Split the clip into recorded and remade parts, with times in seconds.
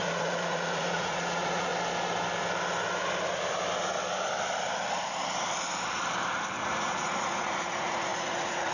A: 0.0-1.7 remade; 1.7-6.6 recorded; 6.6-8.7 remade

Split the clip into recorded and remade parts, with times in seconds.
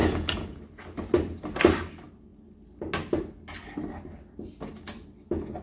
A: 0.0-0.6 remade; 0.6-5.6 recorded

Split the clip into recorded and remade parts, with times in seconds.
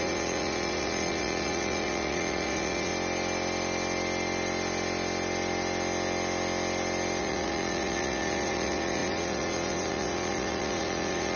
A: 0.0-2.9 remade; 2.9-7.2 recorded; 7.2-11.4 remade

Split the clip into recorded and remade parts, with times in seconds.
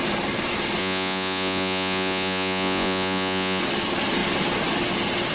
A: 0.0-0.8 recorded; 0.8-3.6 remade; 3.6-5.3 recorded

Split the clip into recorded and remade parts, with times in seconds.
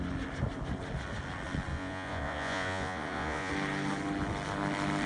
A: 0.0-1.7 recorded; 1.7-3.5 remade; 3.5-5.1 recorded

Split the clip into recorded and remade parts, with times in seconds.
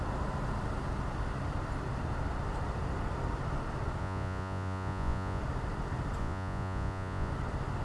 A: 0.0-4.0 recorded; 4.0-5.4 remade; 5.4-6.2 recorded; 6.2-7.3 remade; 7.3-7.8 recorded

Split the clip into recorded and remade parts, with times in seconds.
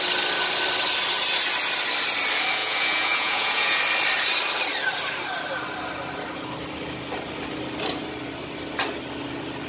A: 0.0-2.6 recorded; 2.6-3.8 remade; 3.8-9.7 recorded